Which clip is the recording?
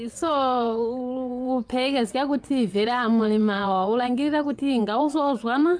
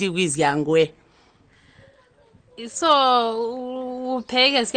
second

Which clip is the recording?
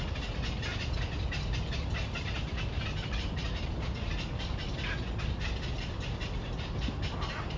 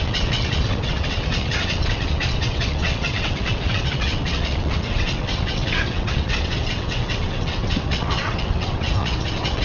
first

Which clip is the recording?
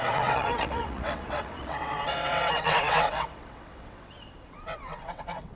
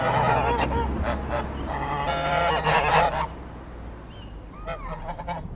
second